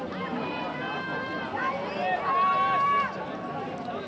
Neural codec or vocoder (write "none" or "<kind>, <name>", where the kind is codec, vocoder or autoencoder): none